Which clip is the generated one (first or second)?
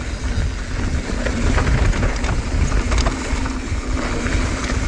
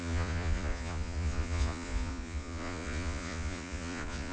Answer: second